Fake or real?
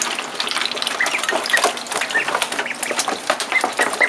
real